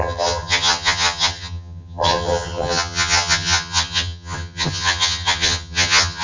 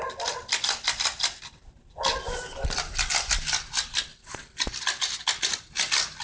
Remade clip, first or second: first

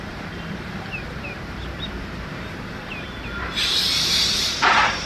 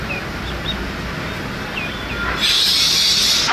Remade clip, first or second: first